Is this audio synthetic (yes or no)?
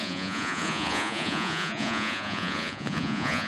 yes